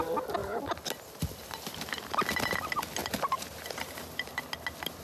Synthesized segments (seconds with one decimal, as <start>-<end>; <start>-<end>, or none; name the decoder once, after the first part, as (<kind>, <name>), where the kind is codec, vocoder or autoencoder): 3.0-3.9 (vocoder, BigVGAN v2)